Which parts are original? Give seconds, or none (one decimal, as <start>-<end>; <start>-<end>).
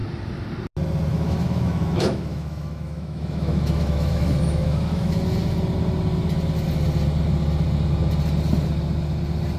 0.0-1.1; 5.2-9.6